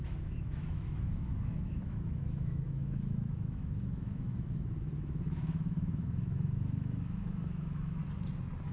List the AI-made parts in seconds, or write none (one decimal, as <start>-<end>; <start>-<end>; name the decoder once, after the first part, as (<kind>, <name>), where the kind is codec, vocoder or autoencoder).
0.0-8.0 (autoencoder, DAC-VAE)